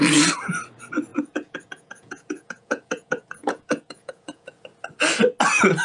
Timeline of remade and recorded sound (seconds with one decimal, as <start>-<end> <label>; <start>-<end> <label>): 0.0-1.1 recorded; 1.1-4.6 remade; 4.6-5.8 recorded